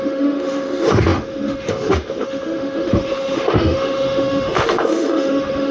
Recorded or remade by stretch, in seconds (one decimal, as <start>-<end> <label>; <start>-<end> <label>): 0.0-5.7 remade